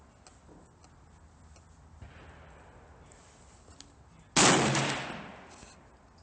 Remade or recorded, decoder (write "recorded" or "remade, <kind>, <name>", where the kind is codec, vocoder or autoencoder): recorded